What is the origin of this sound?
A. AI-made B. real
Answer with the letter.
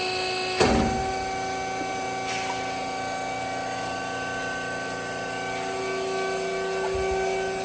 B